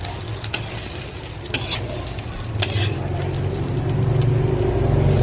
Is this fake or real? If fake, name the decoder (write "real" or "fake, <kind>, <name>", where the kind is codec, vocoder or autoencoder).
real